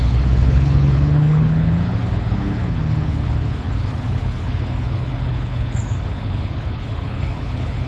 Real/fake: fake